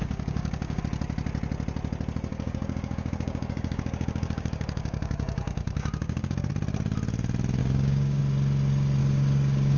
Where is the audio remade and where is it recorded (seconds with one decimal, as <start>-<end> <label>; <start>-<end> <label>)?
0.0-0.8 remade; 0.8-2.3 recorded; 2.3-6.5 remade; 6.5-7.6 recorded; 7.6-8.2 remade; 8.2-9.0 recorded; 9.0-9.8 remade